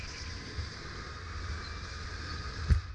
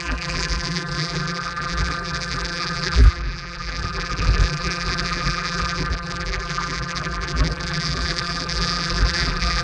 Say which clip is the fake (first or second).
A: second